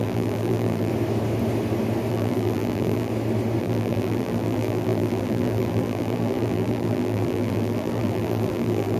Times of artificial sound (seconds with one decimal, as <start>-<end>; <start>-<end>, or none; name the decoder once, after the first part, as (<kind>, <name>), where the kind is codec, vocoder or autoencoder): 0.0-0.9 (vocoder, BigVGAN v2); 2.1-3.1; 3.6-9.0